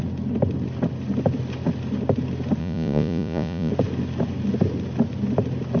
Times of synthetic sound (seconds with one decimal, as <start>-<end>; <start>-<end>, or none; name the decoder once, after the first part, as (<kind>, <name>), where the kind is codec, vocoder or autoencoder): 2.6-3.7 (vocoder, Vocos)